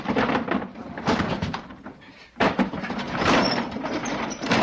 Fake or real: fake